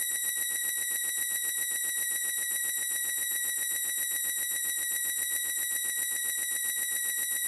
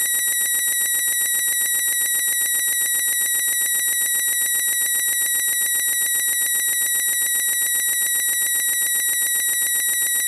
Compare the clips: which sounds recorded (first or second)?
second